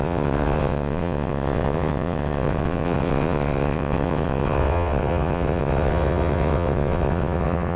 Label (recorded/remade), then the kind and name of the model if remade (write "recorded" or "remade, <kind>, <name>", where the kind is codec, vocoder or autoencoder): remade, vocoder, WaveNeXt